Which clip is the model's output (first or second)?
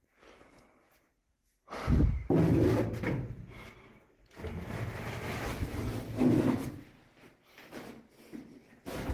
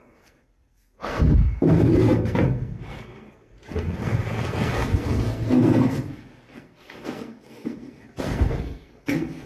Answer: second